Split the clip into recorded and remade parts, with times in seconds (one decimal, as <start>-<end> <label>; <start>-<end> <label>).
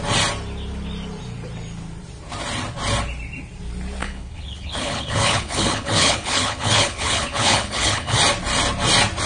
0.0-4.0 recorded; 4.0-8.2 remade; 8.2-9.3 recorded